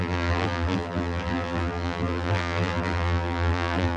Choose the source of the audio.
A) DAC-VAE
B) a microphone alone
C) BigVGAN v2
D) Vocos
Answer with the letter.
C